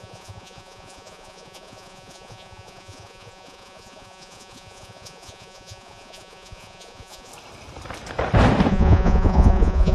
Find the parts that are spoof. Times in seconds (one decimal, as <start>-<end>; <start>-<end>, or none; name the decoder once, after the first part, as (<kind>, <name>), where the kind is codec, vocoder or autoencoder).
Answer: 0.0-7.3 (vocoder, Vocos); 8.7-9.9